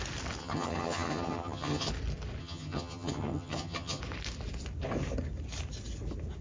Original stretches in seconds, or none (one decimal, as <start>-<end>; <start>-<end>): 0.0-0.4; 1.9-2.4; 4.0-6.4